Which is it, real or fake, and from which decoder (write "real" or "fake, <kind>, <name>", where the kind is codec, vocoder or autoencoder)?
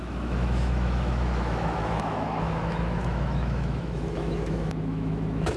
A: fake, autoencoder, DAC-VAE